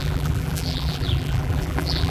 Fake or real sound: fake